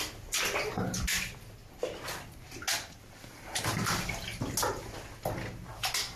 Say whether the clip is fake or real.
real